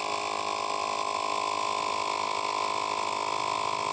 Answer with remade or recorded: recorded